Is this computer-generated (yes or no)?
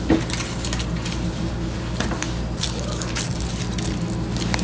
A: no